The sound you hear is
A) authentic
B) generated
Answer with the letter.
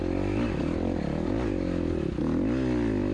A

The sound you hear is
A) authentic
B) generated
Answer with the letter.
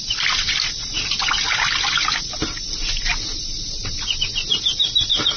A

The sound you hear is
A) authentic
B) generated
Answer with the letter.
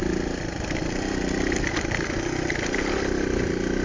A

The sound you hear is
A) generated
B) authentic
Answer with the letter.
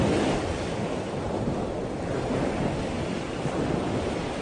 B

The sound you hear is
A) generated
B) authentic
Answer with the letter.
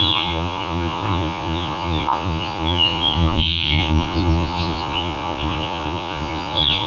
A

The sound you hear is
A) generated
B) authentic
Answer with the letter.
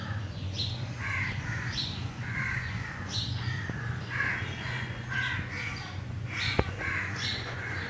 A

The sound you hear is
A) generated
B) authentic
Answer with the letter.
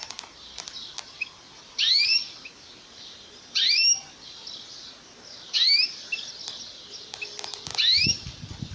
B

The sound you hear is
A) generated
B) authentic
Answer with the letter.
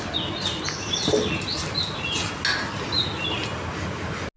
B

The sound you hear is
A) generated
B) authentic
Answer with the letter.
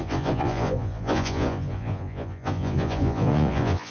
A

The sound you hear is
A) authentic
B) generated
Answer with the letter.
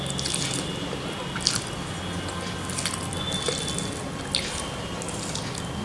A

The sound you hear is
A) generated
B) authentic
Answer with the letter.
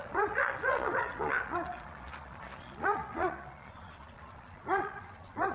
A